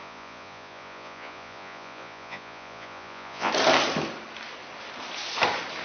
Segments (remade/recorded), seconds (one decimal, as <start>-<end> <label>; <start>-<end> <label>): 0.0-3.5 remade; 3.5-5.8 recorded